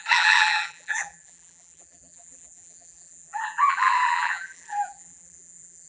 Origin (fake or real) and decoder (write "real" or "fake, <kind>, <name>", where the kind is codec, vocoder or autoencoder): fake, vocoder, BigVGAN v2